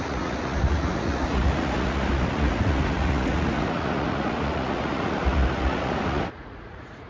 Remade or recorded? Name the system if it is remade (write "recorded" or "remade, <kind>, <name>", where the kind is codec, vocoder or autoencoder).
remade, vocoder, Vocos